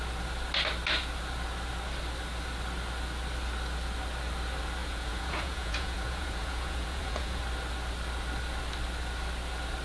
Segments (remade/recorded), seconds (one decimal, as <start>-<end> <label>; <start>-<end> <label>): 0.0-4.8 recorded; 4.8-7.4 remade; 7.4-9.8 recorded